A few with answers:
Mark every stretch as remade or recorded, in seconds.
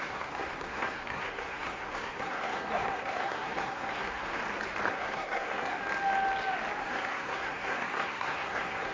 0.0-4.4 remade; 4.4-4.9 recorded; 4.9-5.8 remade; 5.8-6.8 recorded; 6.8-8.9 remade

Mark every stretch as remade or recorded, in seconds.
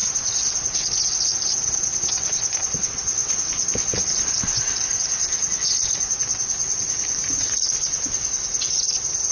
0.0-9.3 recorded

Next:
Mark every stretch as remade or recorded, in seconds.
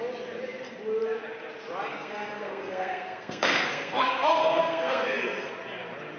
0.0-1.9 recorded; 1.9-5.5 remade; 5.5-6.2 recorded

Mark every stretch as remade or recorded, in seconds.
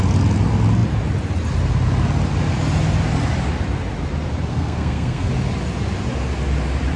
0.0-4.5 recorded; 4.5-5.3 remade; 5.3-7.0 recorded